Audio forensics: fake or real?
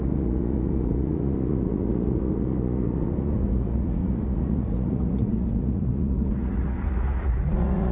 fake